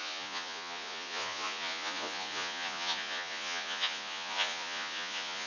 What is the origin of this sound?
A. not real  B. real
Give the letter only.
A